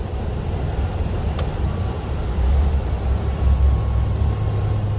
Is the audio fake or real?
real